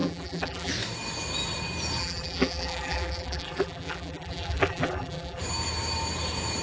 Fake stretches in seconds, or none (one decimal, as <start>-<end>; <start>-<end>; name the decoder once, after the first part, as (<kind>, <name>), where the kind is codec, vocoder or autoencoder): 0.0-0.7 (vocoder, BigVGAN v2); 2.0-5.4